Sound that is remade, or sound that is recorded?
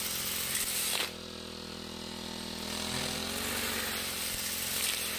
recorded